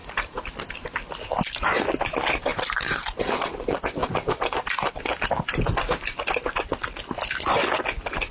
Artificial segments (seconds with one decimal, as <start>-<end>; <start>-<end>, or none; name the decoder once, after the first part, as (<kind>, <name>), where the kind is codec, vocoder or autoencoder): 0.0-0.5 (vocoder, BigVGAN v2); 2.5-3.3; 4.0-5.0